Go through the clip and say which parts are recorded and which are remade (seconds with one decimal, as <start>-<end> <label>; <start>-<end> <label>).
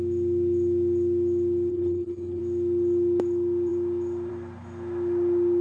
0.0-1.7 recorded; 1.7-2.4 remade; 2.4-5.6 recorded